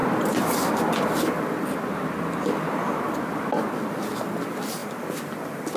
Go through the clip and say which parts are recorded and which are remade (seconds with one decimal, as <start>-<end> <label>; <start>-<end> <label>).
0.0-5.8 recorded